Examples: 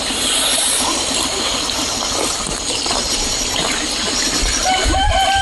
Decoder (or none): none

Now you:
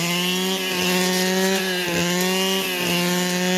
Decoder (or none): none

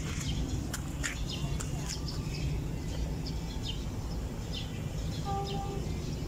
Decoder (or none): none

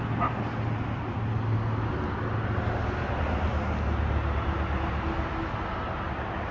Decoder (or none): none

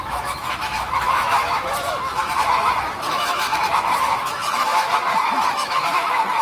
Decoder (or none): autoencoder, DAC-VAE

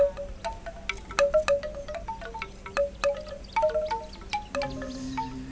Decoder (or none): none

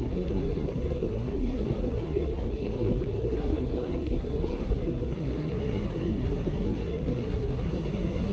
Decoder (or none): codec, SNAC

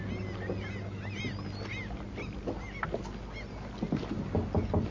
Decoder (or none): none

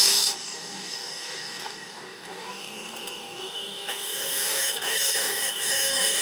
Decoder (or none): codec, DAC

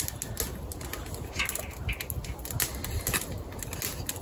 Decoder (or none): none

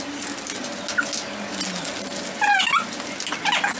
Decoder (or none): none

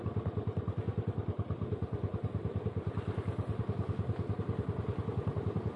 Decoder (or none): none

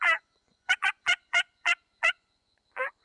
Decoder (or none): vocoder, Vocos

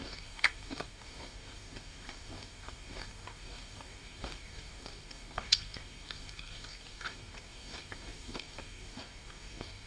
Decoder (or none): codec, DAC